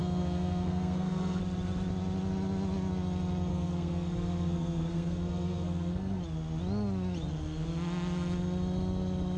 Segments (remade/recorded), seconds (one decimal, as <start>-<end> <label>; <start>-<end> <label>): 0.0-1.4 remade; 1.4-3.5 recorded; 3.5-6.2 remade; 6.2-9.4 recorded